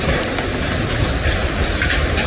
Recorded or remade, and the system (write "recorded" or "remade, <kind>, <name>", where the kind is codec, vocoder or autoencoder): recorded